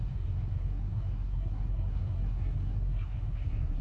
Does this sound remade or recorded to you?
remade